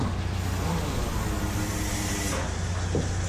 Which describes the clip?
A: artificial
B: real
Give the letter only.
B